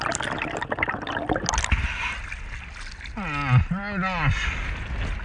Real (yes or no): yes